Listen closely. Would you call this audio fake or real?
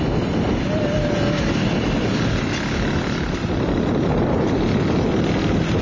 real